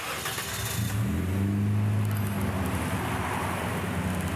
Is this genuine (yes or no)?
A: yes